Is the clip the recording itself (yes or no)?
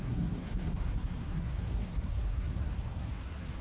no